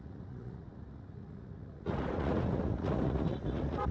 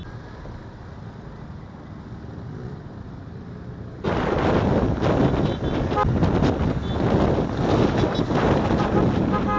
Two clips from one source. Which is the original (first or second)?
second